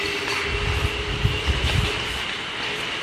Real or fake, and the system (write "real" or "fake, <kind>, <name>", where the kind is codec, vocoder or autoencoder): real